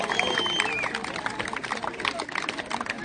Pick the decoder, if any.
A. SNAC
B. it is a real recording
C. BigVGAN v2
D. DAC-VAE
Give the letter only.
B